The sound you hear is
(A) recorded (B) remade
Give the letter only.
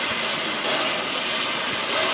A